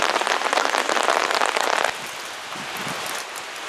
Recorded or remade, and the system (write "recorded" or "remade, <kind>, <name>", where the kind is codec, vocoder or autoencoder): recorded